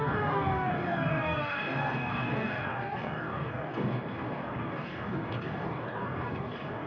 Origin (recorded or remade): remade